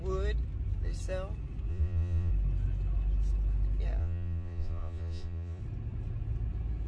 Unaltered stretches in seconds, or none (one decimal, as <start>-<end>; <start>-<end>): 0.0-1.7; 2.3-4.0; 5.6-6.9